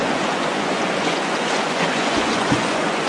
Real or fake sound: fake